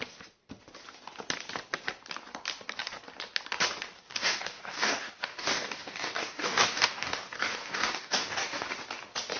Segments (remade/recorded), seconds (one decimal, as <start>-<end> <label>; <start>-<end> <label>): 0.0-4.1 recorded; 4.1-8.7 remade; 8.7-9.4 recorded